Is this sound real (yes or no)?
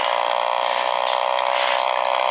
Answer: yes